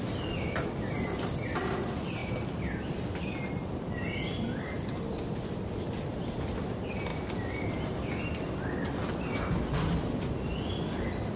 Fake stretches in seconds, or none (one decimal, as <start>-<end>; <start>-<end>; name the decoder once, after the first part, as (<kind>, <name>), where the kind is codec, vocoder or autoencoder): none